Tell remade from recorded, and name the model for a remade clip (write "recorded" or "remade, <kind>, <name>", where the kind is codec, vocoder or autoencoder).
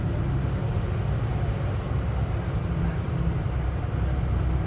recorded